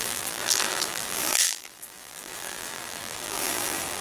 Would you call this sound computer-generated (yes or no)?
yes